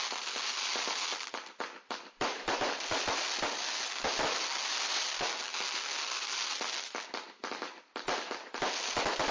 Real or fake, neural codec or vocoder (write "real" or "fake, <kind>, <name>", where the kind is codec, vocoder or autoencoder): real